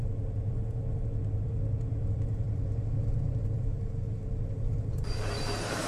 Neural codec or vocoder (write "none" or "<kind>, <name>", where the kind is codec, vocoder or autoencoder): vocoder, BigVGAN v2